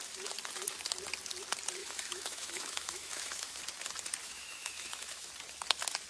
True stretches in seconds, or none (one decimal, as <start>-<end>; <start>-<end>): 0.0-1.8; 3.6-4.2; 5.3-6.1